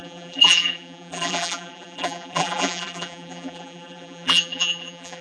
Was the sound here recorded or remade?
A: remade